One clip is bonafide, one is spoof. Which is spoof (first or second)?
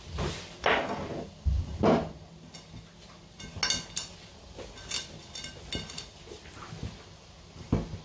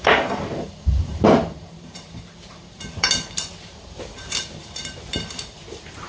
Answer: second